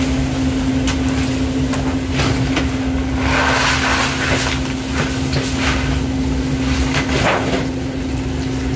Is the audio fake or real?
real